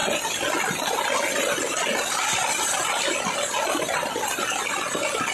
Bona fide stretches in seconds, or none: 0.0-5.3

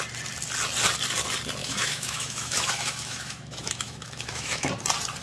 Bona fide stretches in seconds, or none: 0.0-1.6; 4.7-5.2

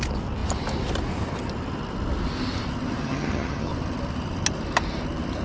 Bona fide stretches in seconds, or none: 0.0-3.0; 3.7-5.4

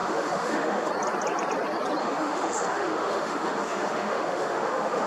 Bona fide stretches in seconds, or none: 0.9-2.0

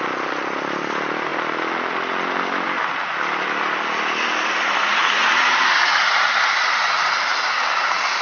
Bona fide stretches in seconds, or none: 0.0-8.2